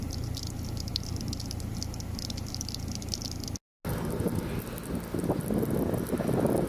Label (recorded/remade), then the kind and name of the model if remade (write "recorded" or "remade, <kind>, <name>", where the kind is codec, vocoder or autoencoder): recorded